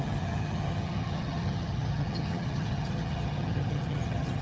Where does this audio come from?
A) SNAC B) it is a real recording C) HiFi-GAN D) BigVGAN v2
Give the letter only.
C